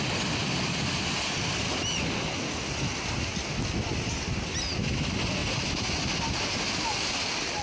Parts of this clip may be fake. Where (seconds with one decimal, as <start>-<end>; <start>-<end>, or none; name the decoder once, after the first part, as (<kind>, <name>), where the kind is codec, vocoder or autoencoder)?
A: none